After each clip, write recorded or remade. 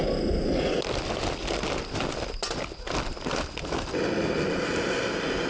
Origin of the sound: recorded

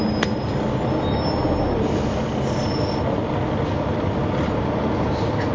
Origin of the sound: recorded